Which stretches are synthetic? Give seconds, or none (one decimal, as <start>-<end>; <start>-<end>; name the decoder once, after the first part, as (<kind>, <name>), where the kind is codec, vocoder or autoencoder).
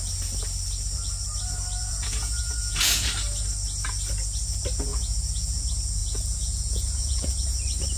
1.8-3.1 (vocoder, Vocos); 4.9-5.6; 6.0-7.3